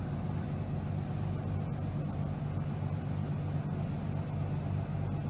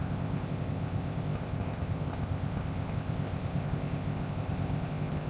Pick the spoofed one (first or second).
second